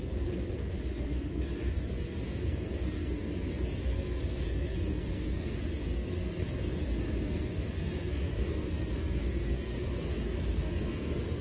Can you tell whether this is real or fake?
fake